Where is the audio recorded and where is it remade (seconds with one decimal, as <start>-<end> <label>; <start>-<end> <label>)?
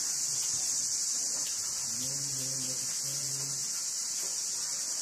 0.0-3.6 recorded; 3.6-4.6 remade; 4.6-5.0 recorded